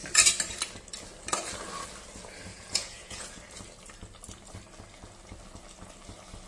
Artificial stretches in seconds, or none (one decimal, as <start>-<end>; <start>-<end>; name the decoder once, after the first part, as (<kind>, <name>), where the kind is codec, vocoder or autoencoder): 2.5-3.4 (vocoder, Vocos)

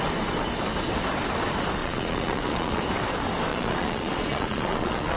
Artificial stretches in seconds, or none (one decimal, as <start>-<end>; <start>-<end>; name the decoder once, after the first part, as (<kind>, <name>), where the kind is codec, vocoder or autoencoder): 1.8-2.8 (vocoder, Vocos); 3.5-5.2

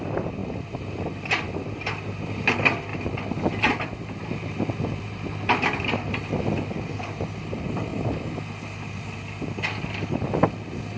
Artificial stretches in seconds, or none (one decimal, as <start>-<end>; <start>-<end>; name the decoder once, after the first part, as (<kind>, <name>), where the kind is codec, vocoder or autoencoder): none

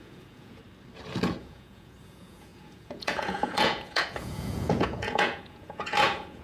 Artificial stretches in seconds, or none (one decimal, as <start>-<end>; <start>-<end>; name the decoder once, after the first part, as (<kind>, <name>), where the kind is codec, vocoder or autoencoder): 0.0-0.6 (vocoder, Vocos); 1.4-6.4

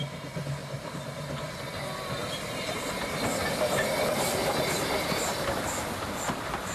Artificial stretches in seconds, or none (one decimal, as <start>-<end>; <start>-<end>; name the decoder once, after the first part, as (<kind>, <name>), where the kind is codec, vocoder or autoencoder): 0.6-1.6 (vocoder, BigVGAN v2); 2.2-2.9

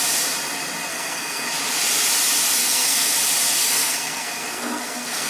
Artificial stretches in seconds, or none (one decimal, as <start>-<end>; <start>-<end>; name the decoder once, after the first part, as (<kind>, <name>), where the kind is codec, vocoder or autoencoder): 0.9-1.5 (codec, SNAC); 2.6-3.1; 3.5-5.3